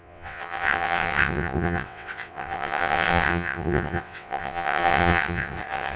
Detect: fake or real fake